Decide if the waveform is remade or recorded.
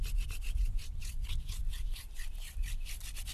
recorded